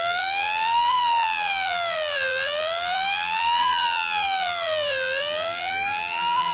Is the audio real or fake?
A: fake